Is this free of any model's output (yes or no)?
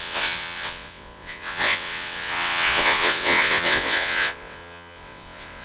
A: no